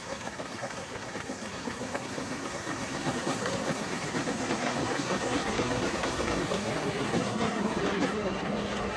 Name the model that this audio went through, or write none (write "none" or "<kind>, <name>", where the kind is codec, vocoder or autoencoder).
codec, SNAC